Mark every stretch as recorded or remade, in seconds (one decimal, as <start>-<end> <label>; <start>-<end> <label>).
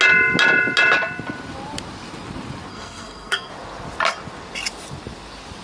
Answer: 0.0-2.7 recorded; 2.7-3.5 remade; 3.5-5.6 recorded